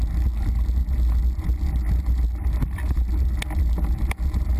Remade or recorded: recorded